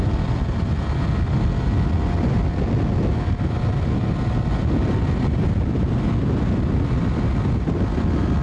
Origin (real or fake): real